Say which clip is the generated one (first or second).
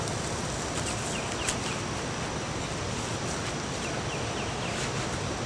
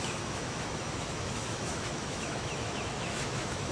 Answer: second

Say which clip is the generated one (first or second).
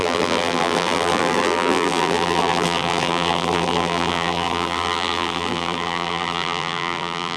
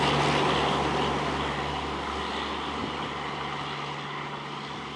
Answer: first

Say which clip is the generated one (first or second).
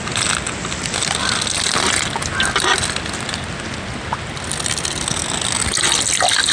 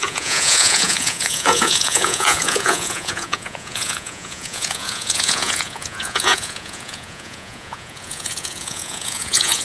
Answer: second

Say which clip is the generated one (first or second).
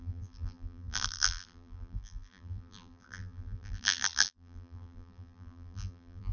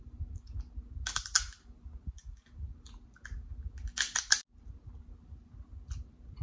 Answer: first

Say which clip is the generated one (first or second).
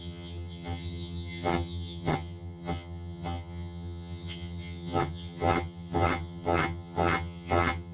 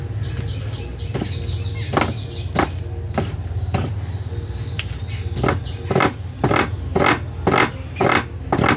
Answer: first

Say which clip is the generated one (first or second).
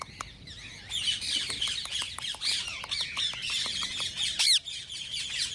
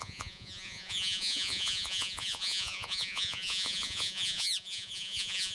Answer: second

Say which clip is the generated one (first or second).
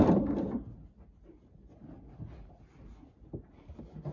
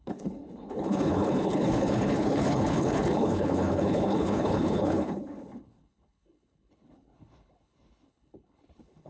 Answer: second